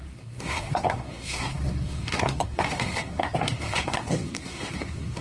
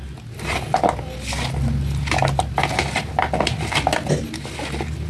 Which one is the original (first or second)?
second